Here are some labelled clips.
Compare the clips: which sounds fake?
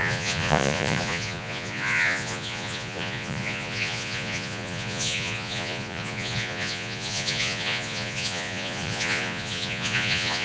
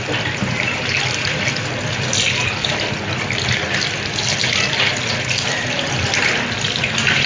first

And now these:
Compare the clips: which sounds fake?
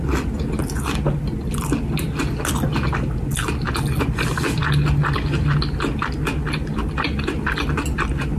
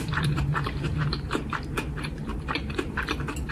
second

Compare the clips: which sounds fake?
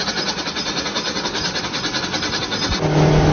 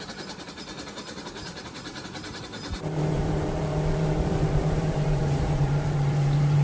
second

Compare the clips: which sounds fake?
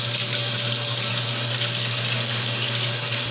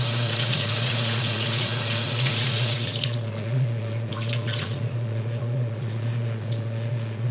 second